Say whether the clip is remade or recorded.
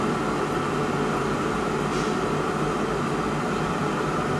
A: recorded